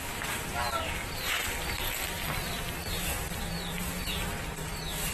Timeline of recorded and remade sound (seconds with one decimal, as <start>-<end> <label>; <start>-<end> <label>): 0.0-1.0 recorded; 1.0-3.9 remade; 3.9-5.1 recorded